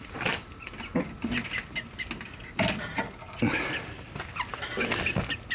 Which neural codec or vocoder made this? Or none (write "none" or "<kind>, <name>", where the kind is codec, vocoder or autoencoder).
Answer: none